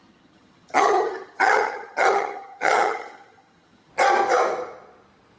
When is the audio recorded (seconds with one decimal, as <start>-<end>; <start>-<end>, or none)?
3.9-5.4